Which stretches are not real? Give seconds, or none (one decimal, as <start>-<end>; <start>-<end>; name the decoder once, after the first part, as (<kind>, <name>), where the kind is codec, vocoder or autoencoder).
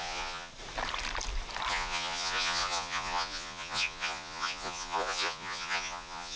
0.0-0.5 (vocoder, Vocos); 1.7-6.4